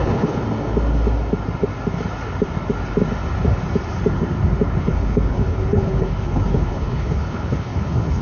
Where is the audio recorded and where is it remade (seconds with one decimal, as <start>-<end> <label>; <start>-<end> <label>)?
0.0-0.4 remade; 0.4-4.8 recorded; 4.8-8.2 remade